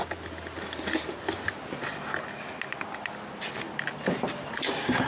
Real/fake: real